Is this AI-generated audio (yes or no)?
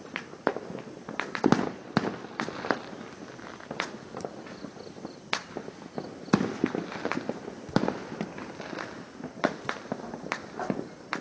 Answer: no